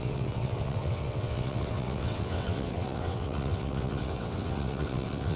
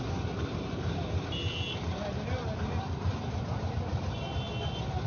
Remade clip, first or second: first